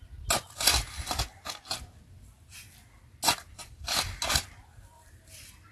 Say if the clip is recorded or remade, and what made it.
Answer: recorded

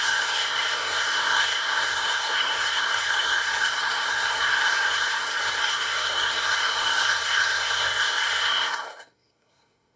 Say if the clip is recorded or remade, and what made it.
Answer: remade, codec, SNAC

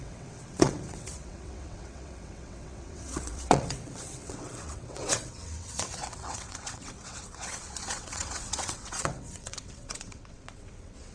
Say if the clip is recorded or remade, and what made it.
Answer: remade, vocoder, WaveNeXt